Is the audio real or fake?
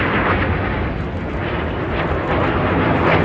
real